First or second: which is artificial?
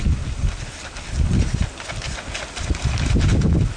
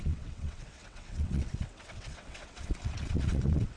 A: second